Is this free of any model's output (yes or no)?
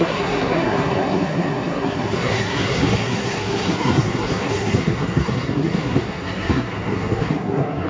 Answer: no